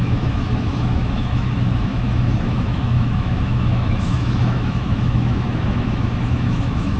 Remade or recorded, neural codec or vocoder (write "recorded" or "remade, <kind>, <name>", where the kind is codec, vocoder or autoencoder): remade, autoencoder, DAC-VAE